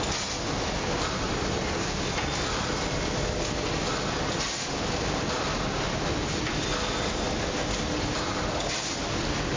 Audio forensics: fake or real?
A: real